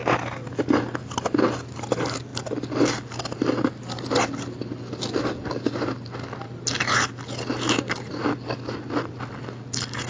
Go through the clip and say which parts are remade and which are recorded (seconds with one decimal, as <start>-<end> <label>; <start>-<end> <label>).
0.0-10.1 recorded